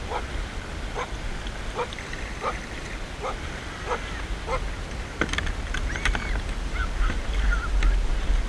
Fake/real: real